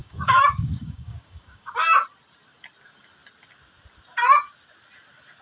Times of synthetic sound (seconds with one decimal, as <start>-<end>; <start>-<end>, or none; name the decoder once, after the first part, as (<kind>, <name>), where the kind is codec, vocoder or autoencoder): 0.0-1.7 (codec, DAC)